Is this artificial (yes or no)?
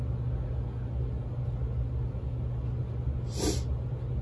no